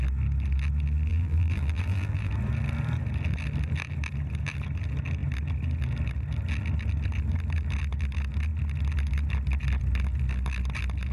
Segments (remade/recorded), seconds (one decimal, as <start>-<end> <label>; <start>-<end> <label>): 0.0-1.1 recorded; 1.1-2.3 remade; 2.3-11.1 recorded